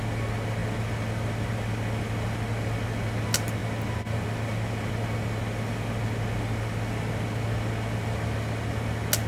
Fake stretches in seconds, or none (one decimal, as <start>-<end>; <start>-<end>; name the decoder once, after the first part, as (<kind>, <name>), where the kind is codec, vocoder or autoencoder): none